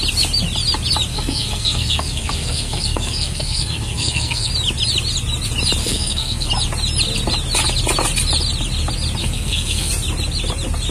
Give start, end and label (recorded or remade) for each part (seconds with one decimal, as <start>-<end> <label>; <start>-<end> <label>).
0.0-1.1 recorded; 1.1-4.5 remade; 4.5-5.8 recorded; 5.8-6.5 remade; 6.5-9.2 recorded; 9.2-9.9 remade; 9.9-10.9 recorded